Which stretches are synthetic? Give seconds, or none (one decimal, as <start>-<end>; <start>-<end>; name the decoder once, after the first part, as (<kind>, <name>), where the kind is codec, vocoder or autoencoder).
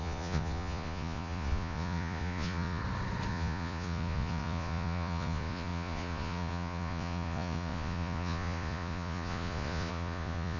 0.0-2.8 (vocoder, Vocos); 3.3-10.6